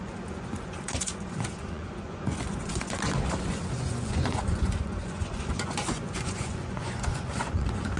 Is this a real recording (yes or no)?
no